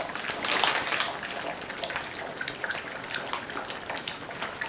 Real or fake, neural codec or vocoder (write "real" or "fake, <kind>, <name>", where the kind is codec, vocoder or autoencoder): real